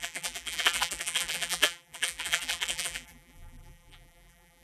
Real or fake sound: fake